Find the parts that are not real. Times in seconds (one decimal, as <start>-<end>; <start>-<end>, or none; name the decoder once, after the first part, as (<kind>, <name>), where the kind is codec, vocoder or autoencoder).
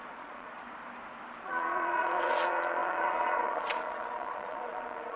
0.0-0.5 (vocoder, Vocos); 1.4-5.2